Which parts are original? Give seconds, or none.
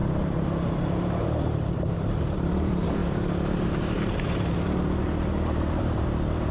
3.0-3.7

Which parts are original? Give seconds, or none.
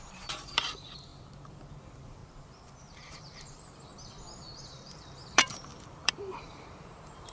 1.1-1.7; 2.2-2.8; 3.9-4.5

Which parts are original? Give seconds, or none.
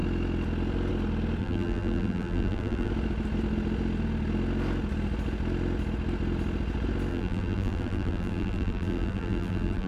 0.0-1.4; 2.9-7.1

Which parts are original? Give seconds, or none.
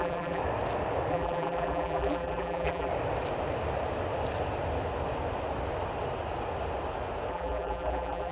0.4-1.1; 2.9-7.3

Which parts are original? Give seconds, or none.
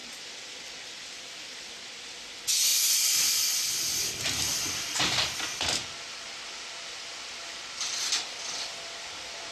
1.7-9.5